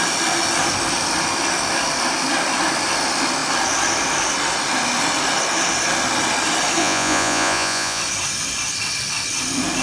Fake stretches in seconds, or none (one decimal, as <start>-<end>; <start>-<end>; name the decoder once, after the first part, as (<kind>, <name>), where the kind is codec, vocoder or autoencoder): 6.8-8.0 (vocoder, Vocos)